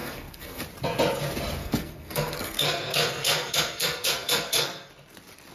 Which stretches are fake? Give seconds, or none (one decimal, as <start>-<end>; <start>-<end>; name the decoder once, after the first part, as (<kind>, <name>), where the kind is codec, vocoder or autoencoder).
0.0-0.6 (codec, SNAC); 1.6-4.9